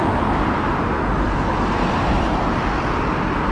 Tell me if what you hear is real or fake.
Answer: real